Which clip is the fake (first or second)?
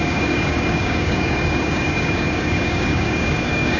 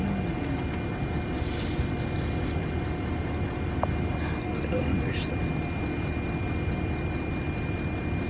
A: first